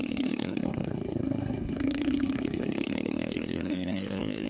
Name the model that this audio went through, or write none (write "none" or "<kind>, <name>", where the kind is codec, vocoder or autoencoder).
codec, SNAC